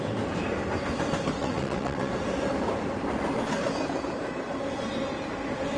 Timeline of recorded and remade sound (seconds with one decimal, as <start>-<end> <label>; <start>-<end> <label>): 0.0-1.4 recorded; 1.4-2.1 remade; 2.1-5.8 recorded